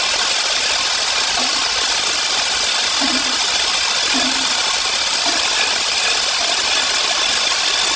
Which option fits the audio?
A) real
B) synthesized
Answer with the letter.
A